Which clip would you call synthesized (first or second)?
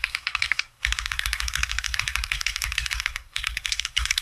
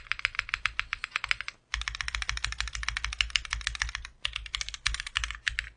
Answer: first